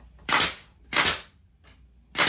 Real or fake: real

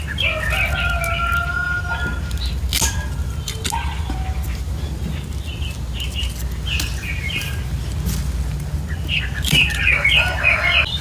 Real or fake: real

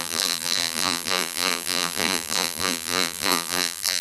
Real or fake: fake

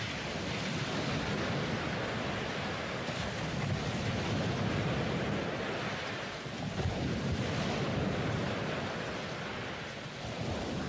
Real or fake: real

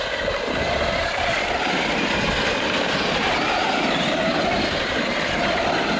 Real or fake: real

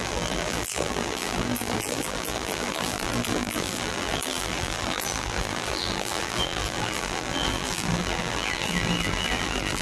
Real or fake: fake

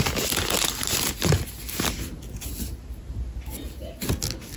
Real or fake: real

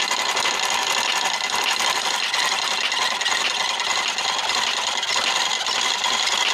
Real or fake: real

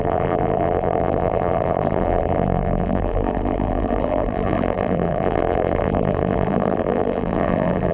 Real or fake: fake